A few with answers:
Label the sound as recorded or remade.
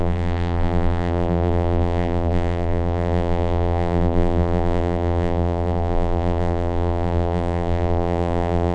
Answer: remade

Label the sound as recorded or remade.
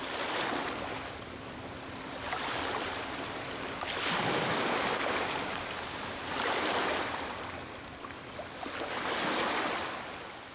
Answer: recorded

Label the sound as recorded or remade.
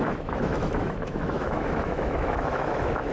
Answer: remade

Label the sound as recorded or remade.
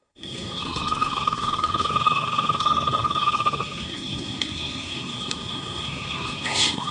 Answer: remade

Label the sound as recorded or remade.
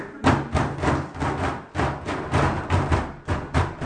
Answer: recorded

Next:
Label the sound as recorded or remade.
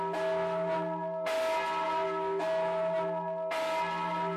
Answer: recorded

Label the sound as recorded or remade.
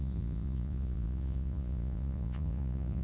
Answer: remade